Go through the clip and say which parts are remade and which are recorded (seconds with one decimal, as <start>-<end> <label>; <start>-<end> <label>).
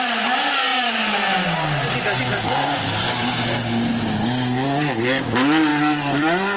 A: 0.0-5.7 recorded; 5.7-6.6 remade